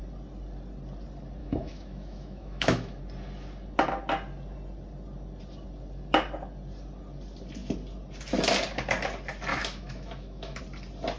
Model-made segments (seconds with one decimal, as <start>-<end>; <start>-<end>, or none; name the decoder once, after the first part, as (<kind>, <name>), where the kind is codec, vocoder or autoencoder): 1.4-3.0 (autoencoder, DAC-VAE); 9.5-10.6